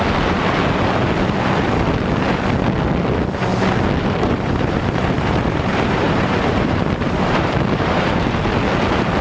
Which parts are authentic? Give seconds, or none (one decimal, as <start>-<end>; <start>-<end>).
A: 0.0-4.0; 8.4-9.2